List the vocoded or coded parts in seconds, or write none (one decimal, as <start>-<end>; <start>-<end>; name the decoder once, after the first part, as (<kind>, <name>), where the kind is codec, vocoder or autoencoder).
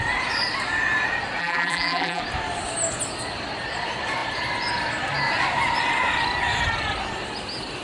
1.4-2.2 (vocoder, BigVGAN v2)